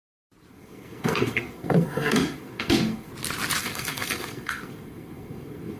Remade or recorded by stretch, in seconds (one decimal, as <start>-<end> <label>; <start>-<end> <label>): 0.0-0.5 recorded; 0.5-3.1 remade; 3.1-3.6 recorded; 3.6-5.8 remade